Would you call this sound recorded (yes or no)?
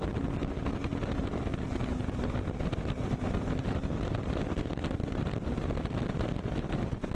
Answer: yes